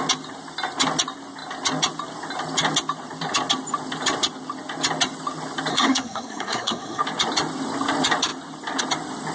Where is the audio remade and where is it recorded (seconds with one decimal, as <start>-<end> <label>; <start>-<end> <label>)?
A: 0.0-5.7 recorded; 5.7-7.0 remade; 7.0-9.3 recorded